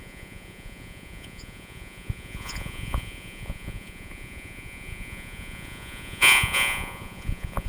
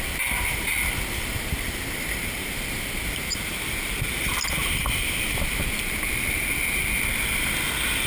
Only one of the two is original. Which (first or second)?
second